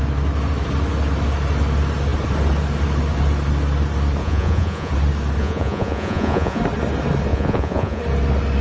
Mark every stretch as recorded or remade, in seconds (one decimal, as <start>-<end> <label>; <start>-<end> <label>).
0.0-4.2 recorded; 4.2-4.9 remade; 4.9-5.4 recorded; 5.4-6.6 remade; 6.6-7.3 recorded; 7.3-8.0 remade; 8.0-8.6 recorded